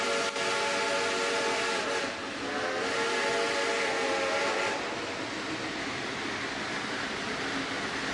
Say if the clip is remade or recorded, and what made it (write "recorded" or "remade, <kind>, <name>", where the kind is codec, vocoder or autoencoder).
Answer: recorded